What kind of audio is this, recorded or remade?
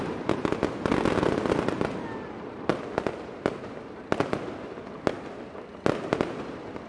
recorded